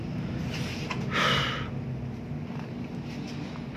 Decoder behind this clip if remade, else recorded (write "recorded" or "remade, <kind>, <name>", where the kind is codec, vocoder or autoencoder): recorded